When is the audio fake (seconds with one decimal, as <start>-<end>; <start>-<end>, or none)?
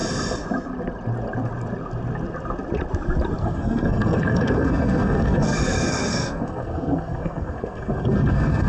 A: 3.4-8.7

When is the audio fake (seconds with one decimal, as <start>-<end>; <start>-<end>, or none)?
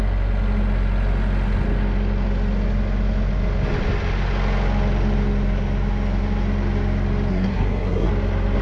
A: 7.3-8.1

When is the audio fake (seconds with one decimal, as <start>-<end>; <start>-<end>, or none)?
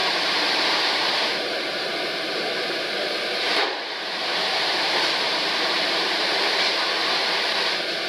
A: 0.0-8.1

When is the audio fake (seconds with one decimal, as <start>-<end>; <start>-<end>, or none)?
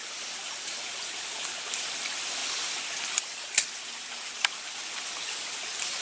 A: none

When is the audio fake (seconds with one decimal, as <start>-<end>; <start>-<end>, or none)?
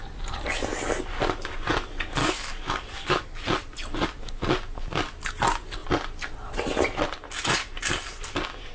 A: 2.2-3.4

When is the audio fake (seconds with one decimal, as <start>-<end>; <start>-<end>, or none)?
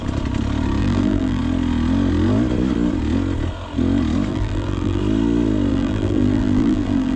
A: 0.8-1.4; 4.3-5.0; 5.7-7.2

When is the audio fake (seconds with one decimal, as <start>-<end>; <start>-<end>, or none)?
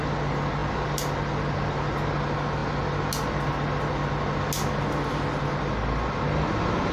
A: none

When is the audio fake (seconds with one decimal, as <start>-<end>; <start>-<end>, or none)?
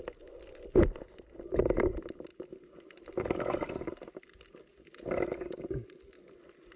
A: none